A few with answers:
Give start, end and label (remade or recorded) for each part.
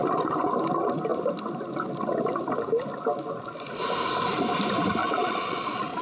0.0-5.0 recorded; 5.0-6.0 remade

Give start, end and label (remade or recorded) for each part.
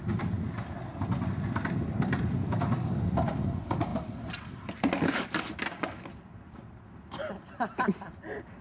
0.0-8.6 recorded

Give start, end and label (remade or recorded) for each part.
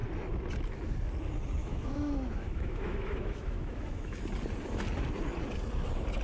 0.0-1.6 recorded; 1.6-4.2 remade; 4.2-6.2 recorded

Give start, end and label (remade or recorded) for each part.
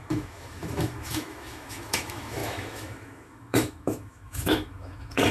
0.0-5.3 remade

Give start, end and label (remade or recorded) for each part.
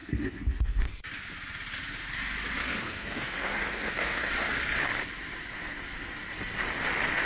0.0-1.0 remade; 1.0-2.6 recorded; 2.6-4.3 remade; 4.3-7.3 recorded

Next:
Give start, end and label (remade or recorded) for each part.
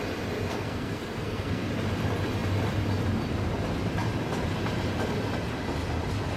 0.0-0.5 recorded; 0.5-1.7 remade; 1.7-6.4 recorded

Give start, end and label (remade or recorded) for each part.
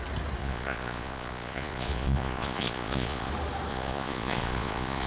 0.0-0.4 recorded; 0.4-3.3 remade; 3.3-3.7 recorded; 3.7-5.1 remade